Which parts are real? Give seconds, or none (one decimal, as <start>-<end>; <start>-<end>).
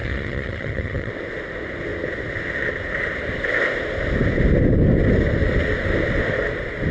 1.1-6.9